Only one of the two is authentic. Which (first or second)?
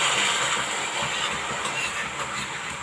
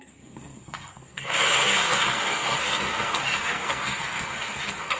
first